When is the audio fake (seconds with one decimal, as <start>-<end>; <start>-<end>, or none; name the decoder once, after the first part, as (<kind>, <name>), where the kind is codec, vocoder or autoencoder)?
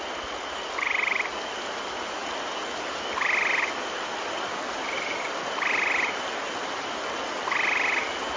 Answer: none